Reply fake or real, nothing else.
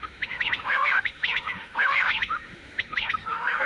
fake